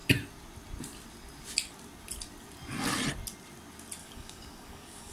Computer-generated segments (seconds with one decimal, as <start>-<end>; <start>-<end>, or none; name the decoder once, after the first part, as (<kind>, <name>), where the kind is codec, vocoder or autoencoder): 4.0-5.1 (codec, DAC)